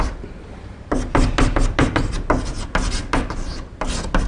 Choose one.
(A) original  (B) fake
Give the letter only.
A